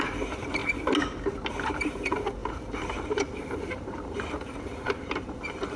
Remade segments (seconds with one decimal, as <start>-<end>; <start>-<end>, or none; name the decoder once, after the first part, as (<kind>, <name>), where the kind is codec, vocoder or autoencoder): 0.0-0.6 (vocoder, BigVGAN v2); 1.5-5.8